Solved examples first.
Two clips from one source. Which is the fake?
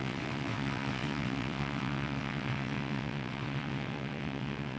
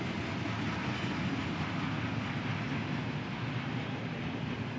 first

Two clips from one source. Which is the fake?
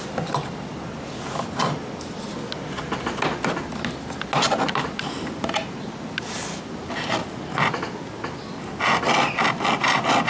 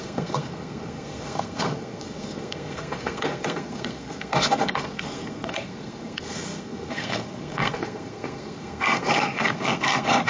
second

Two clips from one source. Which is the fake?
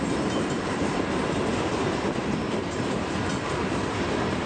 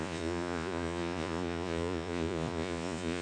second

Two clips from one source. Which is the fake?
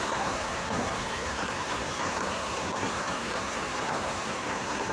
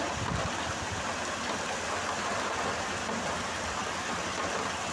first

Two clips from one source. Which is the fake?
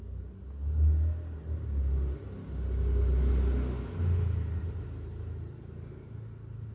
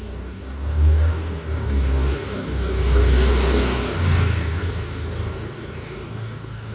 second